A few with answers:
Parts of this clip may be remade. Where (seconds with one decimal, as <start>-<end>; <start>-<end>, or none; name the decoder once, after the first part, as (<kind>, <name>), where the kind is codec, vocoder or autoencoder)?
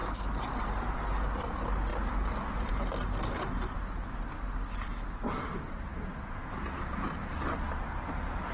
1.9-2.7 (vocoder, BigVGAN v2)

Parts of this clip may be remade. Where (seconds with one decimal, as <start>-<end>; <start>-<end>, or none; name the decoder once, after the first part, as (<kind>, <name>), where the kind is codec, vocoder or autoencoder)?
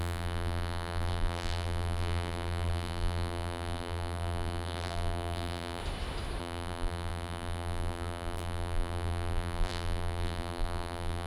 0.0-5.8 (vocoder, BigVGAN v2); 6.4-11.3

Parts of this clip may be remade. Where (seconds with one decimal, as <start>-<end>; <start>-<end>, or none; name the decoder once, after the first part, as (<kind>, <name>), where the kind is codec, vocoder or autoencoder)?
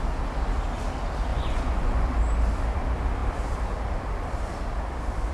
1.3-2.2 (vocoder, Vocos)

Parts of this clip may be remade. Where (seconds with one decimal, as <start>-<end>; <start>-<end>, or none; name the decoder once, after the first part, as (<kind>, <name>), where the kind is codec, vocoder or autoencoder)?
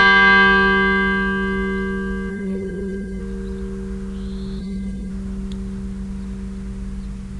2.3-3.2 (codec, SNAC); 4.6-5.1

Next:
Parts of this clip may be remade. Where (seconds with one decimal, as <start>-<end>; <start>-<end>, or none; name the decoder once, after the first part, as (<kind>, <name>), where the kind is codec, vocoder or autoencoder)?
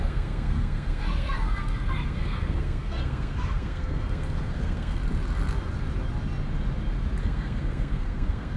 0.0-5.0 (codec, SNAC); 7.2-8.6